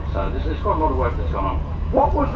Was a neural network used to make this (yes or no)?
yes